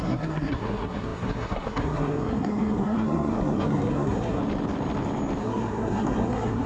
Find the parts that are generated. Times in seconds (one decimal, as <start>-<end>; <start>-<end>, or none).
0.0-4.4; 5.4-6.7